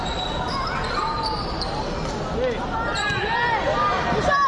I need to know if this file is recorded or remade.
recorded